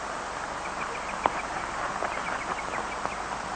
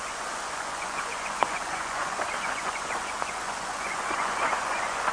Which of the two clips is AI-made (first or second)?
second